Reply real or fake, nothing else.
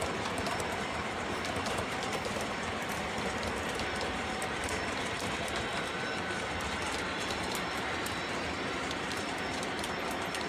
fake